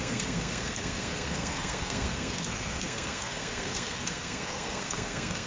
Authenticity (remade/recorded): remade